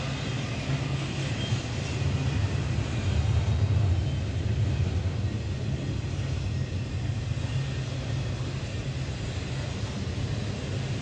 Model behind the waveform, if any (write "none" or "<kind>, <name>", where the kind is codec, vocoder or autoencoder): none